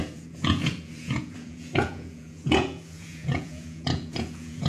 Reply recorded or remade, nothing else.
remade